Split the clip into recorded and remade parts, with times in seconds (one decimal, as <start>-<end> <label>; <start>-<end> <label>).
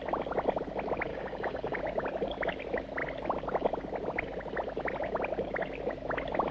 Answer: 0.0-1.1 recorded; 1.1-1.8 remade; 1.8-6.5 recorded